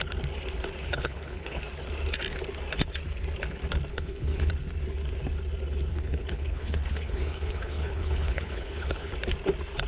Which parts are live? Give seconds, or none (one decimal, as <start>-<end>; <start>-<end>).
0.0-0.9; 1.6-3.9; 4.5-5.9; 9.1-9.9